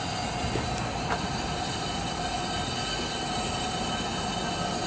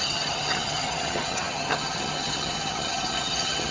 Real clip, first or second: first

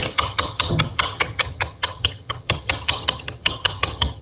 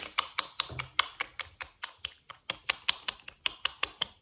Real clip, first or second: second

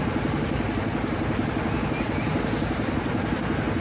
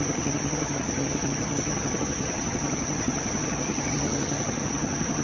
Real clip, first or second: first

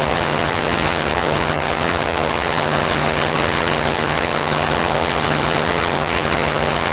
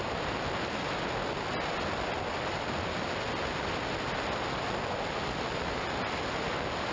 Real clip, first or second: second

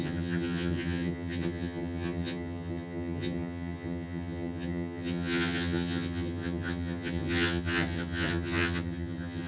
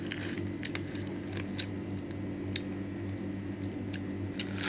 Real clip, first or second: second